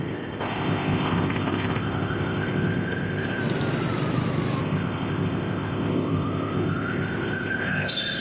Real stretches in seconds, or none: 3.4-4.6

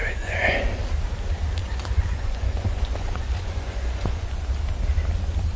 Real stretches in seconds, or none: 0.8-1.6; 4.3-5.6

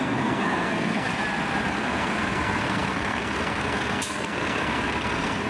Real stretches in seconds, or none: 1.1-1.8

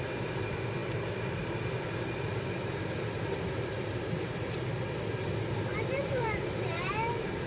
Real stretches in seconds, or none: 0.0-5.7; 6.9-7.5